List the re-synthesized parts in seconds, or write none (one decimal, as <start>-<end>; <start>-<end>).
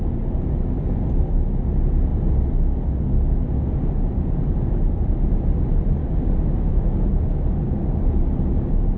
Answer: 6.0-6.7